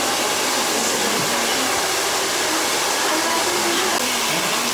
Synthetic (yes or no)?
no